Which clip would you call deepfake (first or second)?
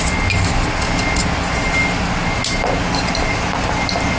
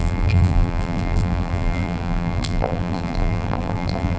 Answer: second